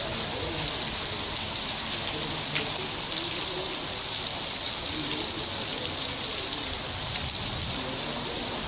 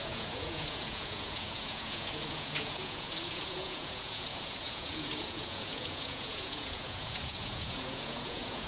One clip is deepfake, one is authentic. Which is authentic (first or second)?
first